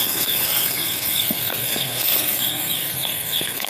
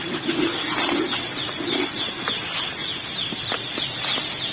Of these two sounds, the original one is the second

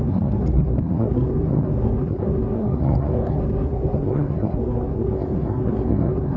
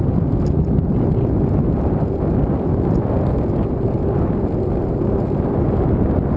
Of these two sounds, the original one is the second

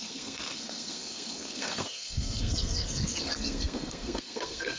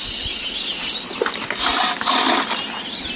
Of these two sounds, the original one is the second